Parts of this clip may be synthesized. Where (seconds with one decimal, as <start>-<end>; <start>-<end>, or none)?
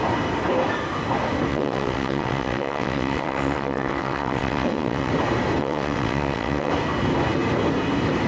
1.5-5.1; 5.6-6.7